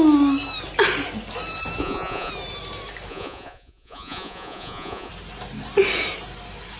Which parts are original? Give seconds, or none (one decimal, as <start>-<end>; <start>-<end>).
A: 0.0-1.8; 2.3-3.1; 5.1-6.8